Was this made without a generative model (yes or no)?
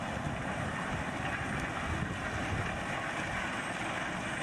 yes